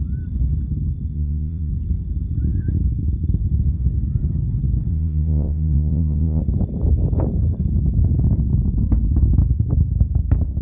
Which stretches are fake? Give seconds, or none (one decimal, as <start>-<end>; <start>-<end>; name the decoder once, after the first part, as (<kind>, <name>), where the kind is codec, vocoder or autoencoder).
1.1-1.7 (vocoder, Vocos); 4.9-6.4